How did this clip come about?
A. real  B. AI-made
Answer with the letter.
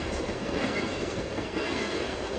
B